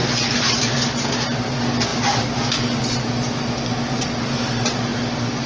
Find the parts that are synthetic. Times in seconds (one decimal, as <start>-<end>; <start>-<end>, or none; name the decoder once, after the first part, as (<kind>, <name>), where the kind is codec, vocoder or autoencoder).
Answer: none